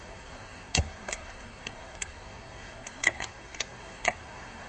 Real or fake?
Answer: fake